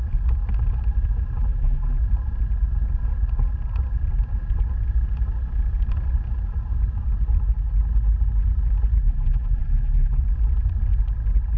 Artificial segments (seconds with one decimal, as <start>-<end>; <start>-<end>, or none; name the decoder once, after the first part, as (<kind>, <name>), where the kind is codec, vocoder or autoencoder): 1.4-2.0 (vocoder, BigVGAN v2); 9.0-10.2